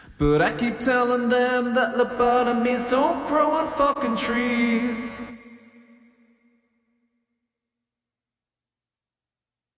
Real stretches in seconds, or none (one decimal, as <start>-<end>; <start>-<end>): 0.0-2.1; 5.3-9.8